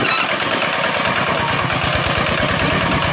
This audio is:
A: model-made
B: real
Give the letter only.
B